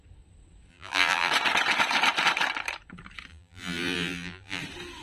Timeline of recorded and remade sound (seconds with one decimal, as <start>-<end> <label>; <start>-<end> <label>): 0.0-0.7 recorded; 0.7-1.3 remade; 1.3-3.3 recorded; 3.3-4.6 remade; 4.6-5.0 recorded